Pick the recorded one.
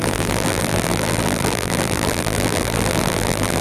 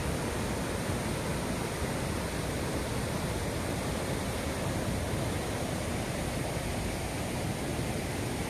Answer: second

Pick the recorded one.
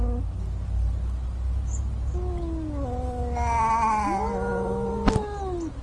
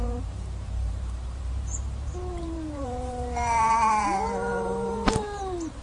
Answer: first